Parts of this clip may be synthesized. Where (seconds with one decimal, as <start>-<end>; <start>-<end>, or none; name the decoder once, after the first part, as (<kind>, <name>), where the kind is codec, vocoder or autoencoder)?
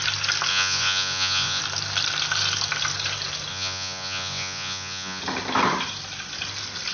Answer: 0.5-1.6 (vocoder, Vocos); 3.5-5.2